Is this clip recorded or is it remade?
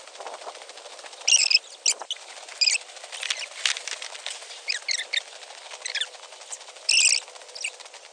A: recorded